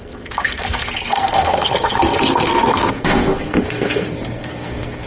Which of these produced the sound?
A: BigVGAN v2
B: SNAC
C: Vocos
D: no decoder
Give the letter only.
B